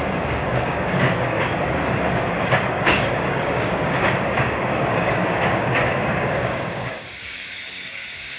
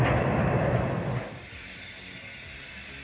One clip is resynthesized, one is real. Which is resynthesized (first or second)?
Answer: first